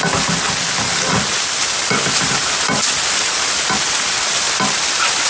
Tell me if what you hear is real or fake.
real